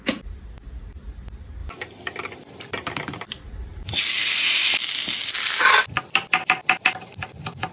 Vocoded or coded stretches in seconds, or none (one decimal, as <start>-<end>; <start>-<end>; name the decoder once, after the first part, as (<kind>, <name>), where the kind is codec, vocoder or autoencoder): none